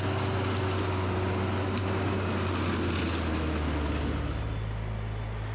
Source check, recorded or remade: recorded